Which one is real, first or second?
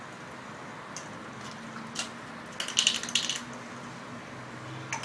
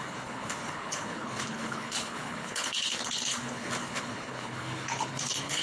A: first